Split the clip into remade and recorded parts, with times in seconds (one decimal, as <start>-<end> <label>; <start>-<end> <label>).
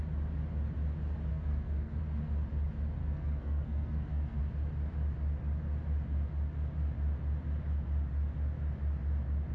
0.0-1.3 recorded; 1.3-2.0 remade; 2.0-3.0 recorded; 3.0-4.4 remade; 4.4-9.5 recorded